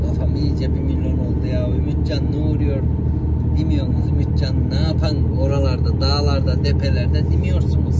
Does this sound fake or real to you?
real